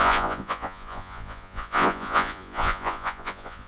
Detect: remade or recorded remade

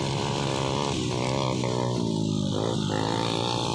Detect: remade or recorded recorded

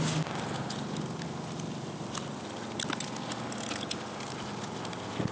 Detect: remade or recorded recorded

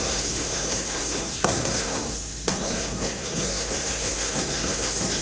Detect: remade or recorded remade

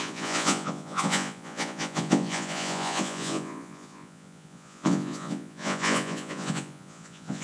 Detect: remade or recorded remade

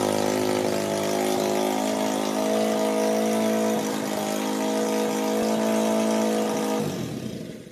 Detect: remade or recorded recorded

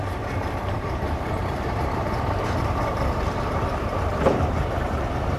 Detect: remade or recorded remade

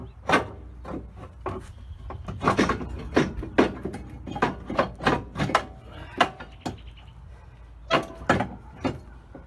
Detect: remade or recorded recorded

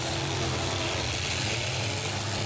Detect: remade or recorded recorded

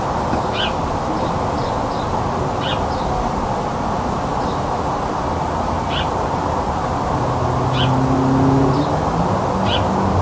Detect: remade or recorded recorded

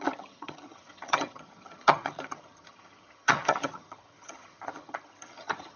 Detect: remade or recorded remade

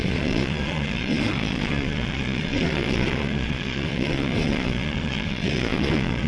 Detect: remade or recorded remade